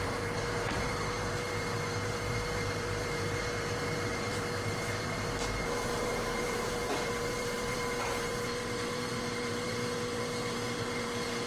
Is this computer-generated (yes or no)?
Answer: yes